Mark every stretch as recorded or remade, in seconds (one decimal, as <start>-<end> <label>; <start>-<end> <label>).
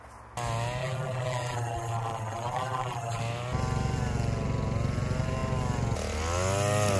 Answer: 0.0-0.8 recorded; 0.8-3.2 remade; 3.2-7.0 recorded